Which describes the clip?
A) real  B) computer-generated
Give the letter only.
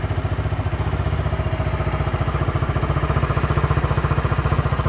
A